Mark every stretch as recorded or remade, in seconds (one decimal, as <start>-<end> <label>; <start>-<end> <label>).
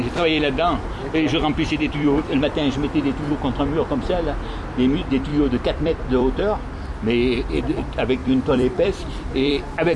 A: 0.0-1.0 recorded; 1.0-3.3 remade; 3.3-5.3 recorded; 5.3-6.4 remade; 6.4-8.2 recorded; 8.2-9.5 remade; 9.5-10.0 recorded